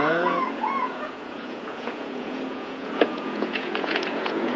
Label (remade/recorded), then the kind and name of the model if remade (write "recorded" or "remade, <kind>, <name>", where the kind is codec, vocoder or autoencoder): remade, vocoder, Vocos